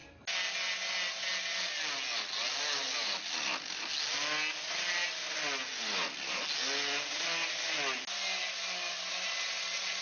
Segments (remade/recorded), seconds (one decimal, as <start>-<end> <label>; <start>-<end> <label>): 0.0-10.0 recorded